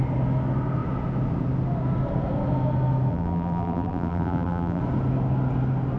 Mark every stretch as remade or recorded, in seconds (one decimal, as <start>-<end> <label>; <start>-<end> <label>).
0.0-3.1 recorded; 3.1-4.8 remade; 4.8-6.0 recorded